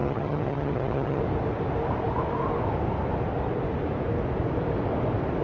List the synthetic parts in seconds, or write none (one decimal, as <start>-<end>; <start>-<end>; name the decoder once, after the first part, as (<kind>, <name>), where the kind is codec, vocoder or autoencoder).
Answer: 0.0-1.2 (vocoder, HiFi-GAN)